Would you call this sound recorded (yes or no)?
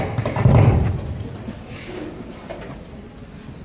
yes